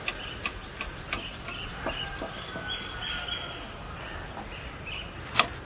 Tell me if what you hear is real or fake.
real